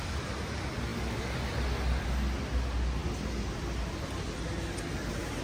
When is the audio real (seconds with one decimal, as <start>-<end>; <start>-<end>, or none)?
0.0-5.4